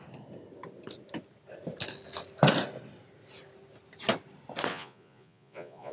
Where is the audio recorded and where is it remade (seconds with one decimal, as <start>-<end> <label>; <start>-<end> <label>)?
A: 0.0-4.7 recorded; 4.7-5.9 remade